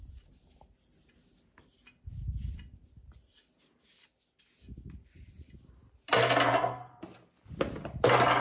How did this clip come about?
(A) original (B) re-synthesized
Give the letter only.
A